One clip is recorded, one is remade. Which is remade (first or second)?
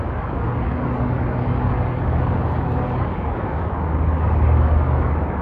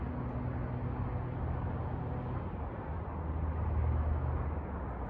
first